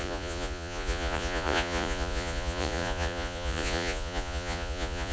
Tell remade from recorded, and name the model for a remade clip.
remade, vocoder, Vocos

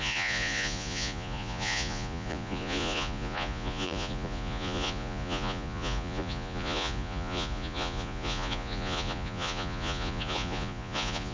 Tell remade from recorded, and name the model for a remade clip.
remade, vocoder, Vocos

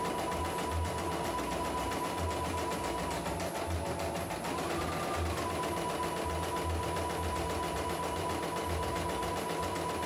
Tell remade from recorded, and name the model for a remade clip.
recorded